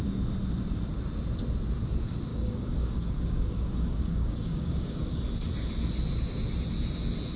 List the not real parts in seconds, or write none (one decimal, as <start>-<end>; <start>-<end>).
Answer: 2.3-5.2